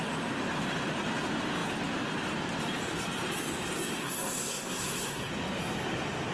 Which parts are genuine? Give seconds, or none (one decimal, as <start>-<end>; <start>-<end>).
0.0-4.0; 5.3-6.3